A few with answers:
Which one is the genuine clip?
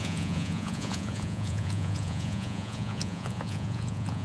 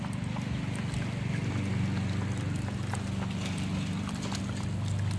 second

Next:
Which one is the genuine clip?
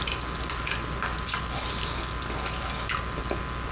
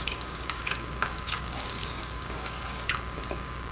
first